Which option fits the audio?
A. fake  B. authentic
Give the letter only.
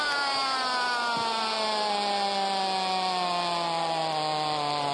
B